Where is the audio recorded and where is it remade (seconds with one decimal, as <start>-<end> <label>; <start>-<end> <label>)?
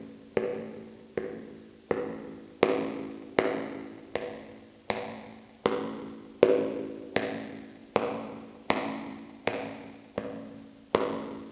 0.0-7.8 recorded; 7.8-10.0 remade; 10.0-11.5 recorded